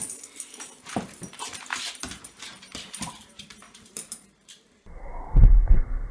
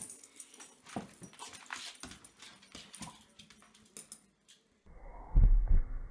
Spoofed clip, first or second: first